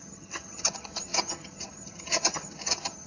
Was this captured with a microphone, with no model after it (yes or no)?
no